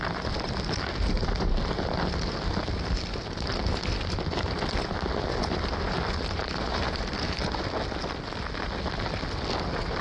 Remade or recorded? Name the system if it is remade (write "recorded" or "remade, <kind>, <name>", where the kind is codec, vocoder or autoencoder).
recorded